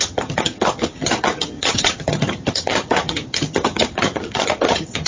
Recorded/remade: remade